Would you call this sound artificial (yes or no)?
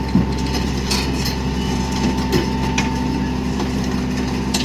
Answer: no